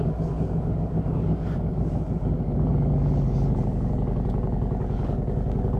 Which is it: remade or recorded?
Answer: remade